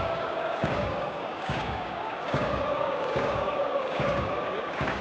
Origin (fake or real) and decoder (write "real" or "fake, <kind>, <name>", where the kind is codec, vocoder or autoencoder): fake, codec, DAC